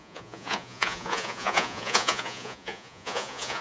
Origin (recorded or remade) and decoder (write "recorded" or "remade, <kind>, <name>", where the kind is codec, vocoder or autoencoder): remade, vocoder, Vocos